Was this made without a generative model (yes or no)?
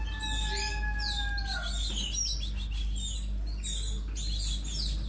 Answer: yes